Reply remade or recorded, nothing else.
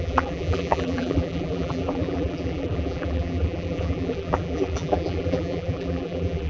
remade